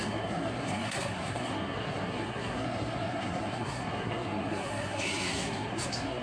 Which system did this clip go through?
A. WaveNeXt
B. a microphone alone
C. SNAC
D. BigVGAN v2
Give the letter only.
C